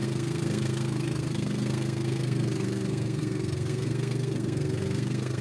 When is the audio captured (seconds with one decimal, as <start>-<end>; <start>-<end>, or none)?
none